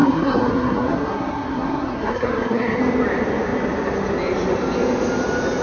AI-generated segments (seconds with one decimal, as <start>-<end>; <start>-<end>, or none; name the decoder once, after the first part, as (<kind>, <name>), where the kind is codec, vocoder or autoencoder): 0.0-2.8 (codec, SNAC)